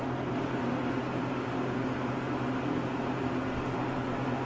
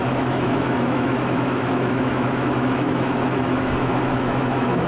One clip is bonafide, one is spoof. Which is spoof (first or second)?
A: second